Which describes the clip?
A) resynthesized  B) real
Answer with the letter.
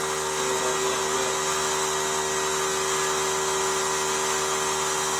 B